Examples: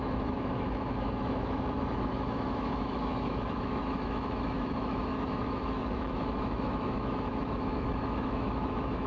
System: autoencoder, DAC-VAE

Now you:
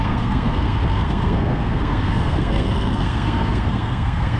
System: codec, SNAC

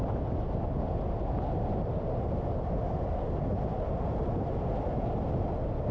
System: none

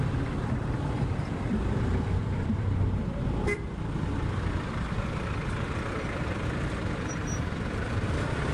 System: vocoder, BigVGAN v2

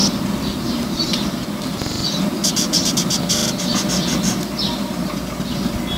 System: none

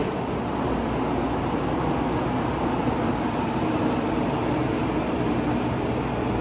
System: none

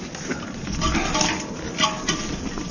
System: none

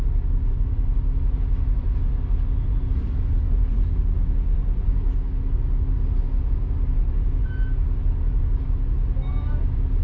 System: none